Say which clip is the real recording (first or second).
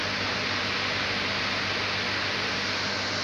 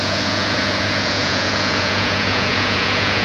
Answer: first